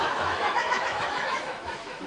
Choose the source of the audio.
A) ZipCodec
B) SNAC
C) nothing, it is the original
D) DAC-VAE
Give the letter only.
D